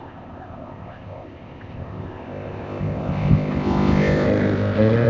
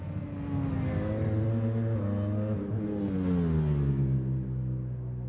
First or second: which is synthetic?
first